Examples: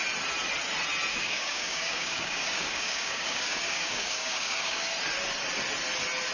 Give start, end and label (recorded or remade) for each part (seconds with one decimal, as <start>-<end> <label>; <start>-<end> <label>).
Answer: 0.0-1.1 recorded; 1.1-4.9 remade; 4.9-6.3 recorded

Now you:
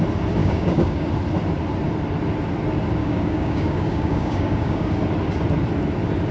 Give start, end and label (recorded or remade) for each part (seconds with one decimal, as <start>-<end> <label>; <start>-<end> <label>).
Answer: 0.0-0.4 recorded; 0.4-1.1 remade; 1.1-3.0 recorded; 3.0-4.9 remade; 4.9-6.3 recorded

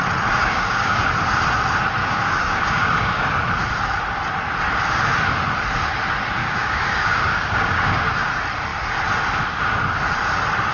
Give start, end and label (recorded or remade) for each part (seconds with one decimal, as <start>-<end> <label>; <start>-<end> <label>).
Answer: 0.0-0.4 recorded; 0.4-1.0 remade; 1.0-2.0 recorded; 2.0-3.2 remade; 3.2-6.4 recorded; 6.4-8.1 remade; 8.1-10.7 recorded

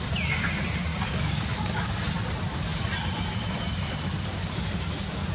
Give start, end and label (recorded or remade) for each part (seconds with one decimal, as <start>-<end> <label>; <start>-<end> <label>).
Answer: 0.0-0.9 recorded; 0.9-1.9 remade; 1.9-5.3 recorded

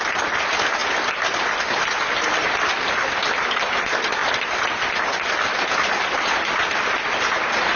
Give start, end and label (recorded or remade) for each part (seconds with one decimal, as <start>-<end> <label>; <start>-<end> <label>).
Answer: 0.0-7.8 recorded

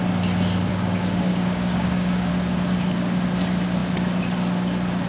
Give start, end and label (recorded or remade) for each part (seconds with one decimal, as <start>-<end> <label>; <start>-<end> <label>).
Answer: 0.0-0.7 recorded; 0.7-2.3 remade; 2.3-5.1 recorded

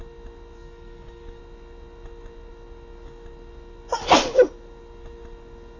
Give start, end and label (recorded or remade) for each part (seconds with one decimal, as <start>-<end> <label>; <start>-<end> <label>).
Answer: 0.0-0.6 recorded; 0.6-1.4 remade; 1.4-5.8 recorded